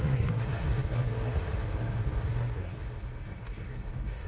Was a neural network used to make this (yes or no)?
yes